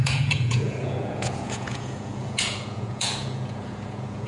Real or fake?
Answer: fake